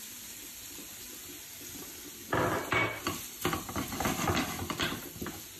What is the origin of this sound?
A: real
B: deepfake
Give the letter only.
A